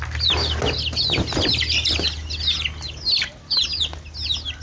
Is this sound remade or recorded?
recorded